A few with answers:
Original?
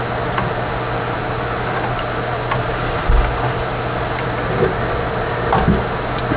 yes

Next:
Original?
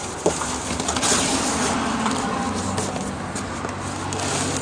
yes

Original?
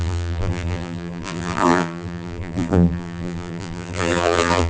no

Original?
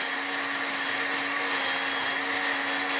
yes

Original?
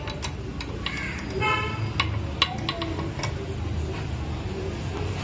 yes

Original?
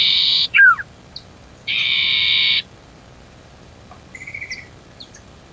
no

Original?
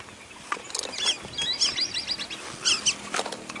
yes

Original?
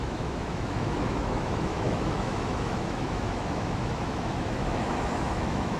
no